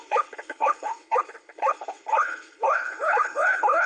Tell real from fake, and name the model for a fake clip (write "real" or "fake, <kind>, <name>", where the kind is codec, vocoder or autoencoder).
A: fake, codec, HILCodec